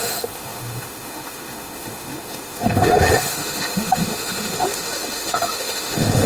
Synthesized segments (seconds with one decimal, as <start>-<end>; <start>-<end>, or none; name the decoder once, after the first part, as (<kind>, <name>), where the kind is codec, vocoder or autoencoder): 0.0-6.3 (autoencoder, DAC-VAE)